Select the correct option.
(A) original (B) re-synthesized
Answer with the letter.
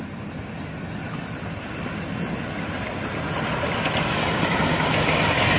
A